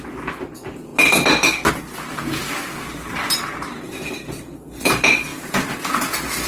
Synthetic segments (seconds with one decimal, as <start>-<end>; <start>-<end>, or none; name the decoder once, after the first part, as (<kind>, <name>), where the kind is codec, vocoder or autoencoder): none